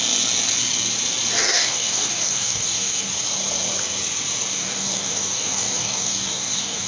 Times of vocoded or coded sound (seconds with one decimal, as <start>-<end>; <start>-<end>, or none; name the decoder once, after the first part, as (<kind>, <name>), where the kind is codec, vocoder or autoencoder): 1.4-3.1 (codec, DAC); 4.5-6.9